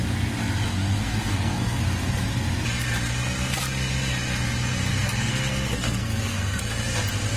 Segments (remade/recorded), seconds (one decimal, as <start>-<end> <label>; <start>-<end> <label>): 0.0-1.0 recorded; 1.0-1.8 remade; 1.8-4.9 recorded; 4.9-6.6 remade; 6.6-7.4 recorded